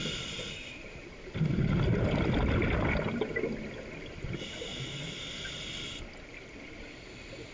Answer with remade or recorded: recorded